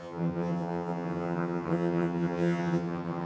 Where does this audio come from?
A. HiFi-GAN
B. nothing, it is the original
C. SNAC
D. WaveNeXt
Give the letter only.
A